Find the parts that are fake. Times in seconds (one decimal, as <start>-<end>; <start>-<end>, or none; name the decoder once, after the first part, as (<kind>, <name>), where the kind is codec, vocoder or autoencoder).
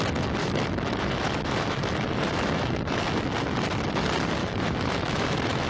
0.4-2.9 (autoencoder, DAC-VAE); 4.4-5.7